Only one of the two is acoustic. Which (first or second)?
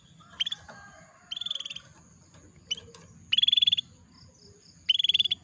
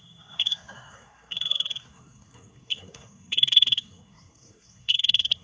first